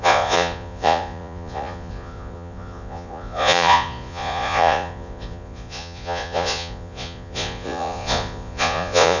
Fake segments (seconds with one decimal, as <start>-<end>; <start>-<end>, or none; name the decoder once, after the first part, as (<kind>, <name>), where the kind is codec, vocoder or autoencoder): 0.0-9.2 (vocoder, Vocos)